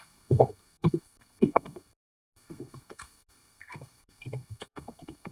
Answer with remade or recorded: remade